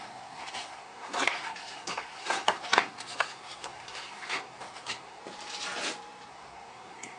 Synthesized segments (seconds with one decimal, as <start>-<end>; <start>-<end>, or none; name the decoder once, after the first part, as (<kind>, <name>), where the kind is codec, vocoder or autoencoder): 0.0-5.2 (codec, SNAC); 6.3-7.2